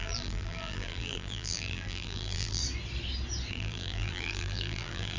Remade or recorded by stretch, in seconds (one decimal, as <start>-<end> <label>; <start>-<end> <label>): 0.0-2.6 remade; 2.6-3.5 recorded; 3.5-5.2 remade